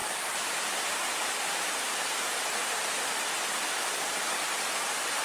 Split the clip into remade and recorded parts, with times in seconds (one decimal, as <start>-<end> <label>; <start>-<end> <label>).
0.0-3.1 remade; 3.1-5.2 recorded